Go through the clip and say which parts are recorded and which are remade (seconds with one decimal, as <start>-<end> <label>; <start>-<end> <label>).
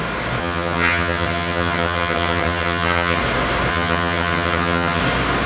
0.0-0.4 recorded; 0.4-3.2 remade; 3.2-3.7 recorded; 3.7-5.0 remade; 5.0-5.5 recorded